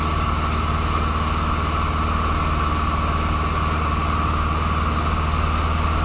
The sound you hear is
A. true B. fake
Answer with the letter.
A